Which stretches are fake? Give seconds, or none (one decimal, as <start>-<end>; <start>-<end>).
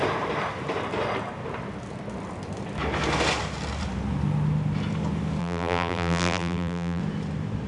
5.4-7.0